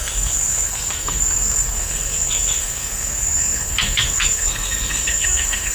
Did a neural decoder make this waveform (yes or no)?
yes